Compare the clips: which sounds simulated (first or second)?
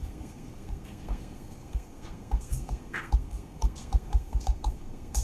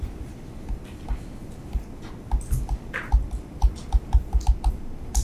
first